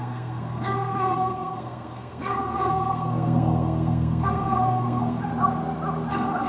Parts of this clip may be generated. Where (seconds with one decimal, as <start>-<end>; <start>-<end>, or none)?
0.0-5.3; 6.1-6.5

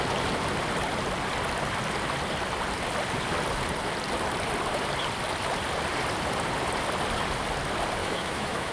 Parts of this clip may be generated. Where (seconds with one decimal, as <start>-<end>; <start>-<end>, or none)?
8.0-8.7